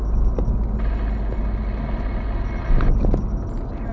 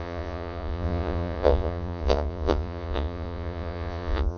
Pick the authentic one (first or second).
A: first